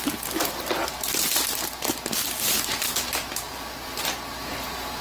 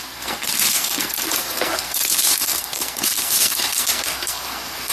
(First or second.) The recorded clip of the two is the first